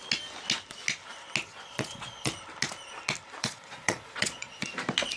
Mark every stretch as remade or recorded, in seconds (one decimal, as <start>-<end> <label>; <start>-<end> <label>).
0.0-1.5 recorded; 1.5-2.3 remade; 2.3-3.4 recorded; 3.4-4.7 remade; 4.7-5.2 recorded